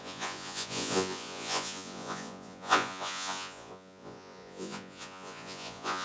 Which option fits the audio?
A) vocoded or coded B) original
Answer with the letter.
A